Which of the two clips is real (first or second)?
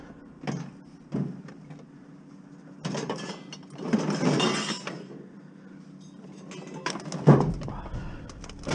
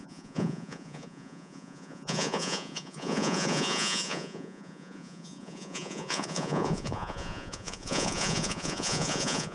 first